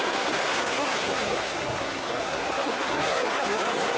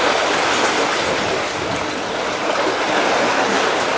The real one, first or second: second